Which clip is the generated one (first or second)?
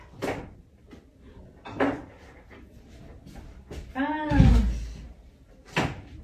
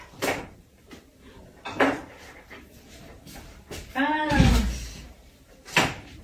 second